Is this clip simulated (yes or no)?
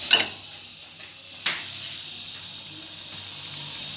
no